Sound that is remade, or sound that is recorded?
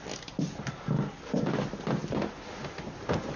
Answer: recorded